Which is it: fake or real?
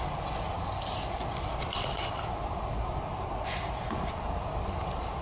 real